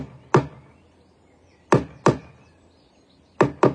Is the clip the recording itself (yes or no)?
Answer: yes